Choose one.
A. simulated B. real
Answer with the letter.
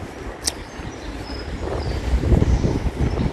B